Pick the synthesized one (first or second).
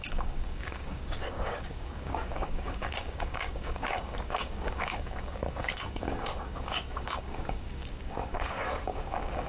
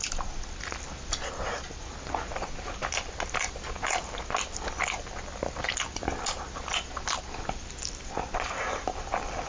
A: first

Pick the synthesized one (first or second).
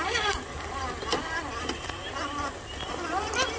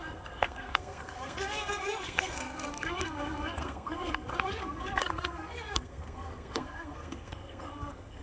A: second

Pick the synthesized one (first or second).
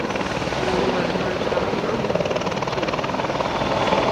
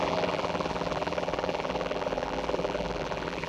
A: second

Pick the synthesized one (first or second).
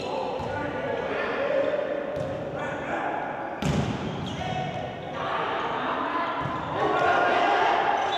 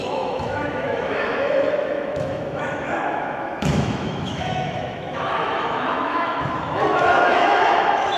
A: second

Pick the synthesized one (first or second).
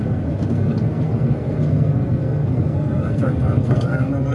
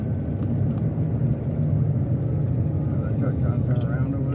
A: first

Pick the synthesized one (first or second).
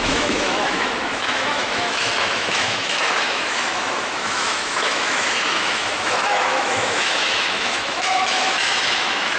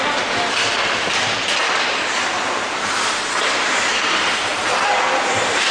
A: first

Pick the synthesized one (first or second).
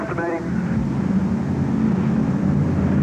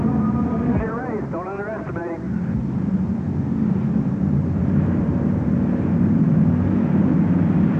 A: second